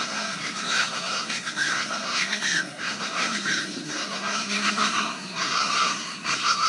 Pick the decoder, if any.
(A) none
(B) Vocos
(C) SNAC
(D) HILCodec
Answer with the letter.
C